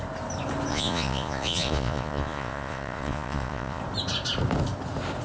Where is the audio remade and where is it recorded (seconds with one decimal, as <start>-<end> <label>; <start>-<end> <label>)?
0.0-0.7 recorded; 0.7-3.8 remade; 3.8-5.2 recorded